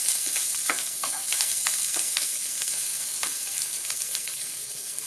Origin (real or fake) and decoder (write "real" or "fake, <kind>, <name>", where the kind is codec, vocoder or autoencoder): fake, codec, SNAC